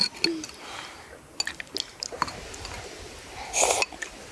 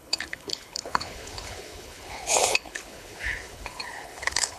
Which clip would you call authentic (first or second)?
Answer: first